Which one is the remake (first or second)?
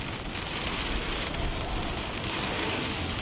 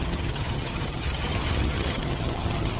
second